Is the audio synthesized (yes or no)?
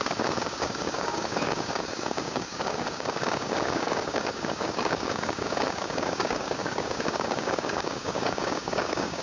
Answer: yes